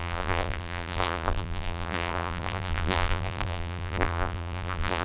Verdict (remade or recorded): remade